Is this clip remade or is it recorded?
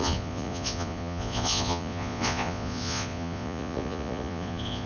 remade